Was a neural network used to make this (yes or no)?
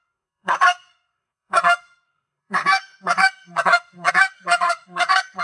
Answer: yes